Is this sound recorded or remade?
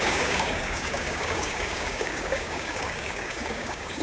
remade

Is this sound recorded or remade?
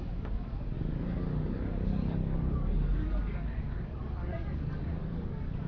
remade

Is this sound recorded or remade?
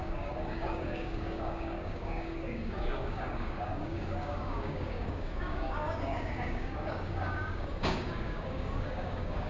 remade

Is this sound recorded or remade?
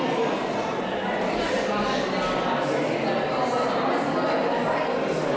recorded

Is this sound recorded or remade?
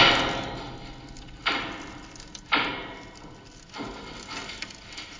recorded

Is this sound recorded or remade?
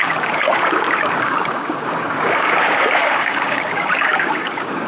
remade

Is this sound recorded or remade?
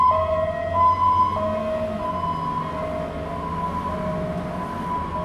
recorded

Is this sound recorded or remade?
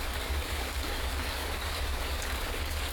remade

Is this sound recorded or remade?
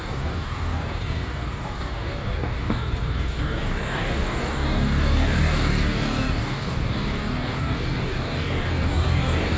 remade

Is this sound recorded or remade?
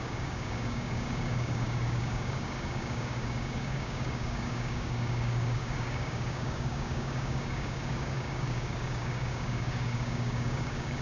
remade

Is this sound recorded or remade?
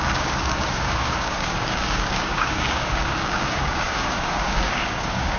remade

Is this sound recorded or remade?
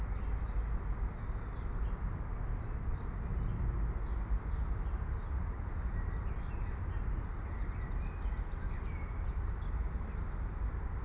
recorded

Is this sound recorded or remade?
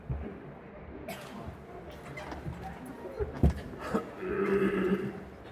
recorded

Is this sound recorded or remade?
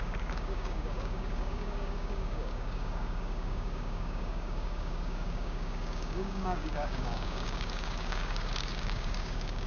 remade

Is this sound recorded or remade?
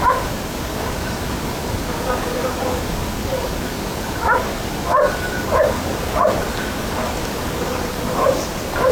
remade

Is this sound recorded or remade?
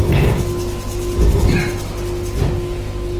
recorded